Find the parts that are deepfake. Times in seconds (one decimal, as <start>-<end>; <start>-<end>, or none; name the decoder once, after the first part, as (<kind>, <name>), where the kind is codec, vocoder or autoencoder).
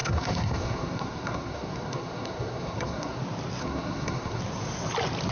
0.0-3.2 (codec, SNAC); 3.6-4.4